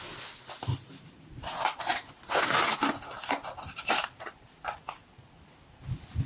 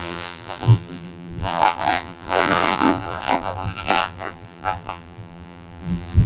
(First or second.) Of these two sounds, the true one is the first